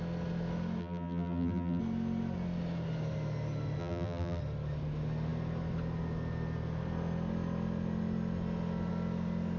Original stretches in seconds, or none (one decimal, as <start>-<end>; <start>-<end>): 0.0-0.8; 1.8-3.8; 4.4-9.6